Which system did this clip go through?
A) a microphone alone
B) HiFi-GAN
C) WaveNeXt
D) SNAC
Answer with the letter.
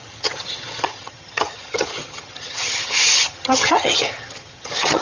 B